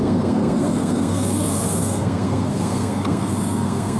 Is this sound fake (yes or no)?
yes